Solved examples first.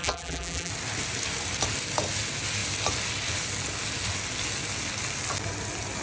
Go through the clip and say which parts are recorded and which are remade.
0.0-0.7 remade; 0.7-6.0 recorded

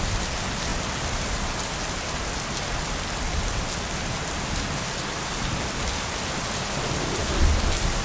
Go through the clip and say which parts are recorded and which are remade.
0.0-8.0 recorded

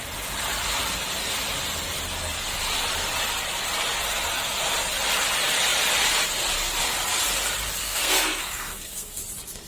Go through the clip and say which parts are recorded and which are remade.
0.0-7.8 recorded; 7.8-9.2 remade; 9.2-9.7 recorded

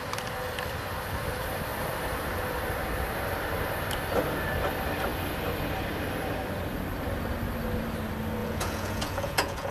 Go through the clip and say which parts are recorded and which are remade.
0.0-8.4 recorded; 8.4-9.7 remade